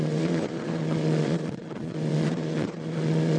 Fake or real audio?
fake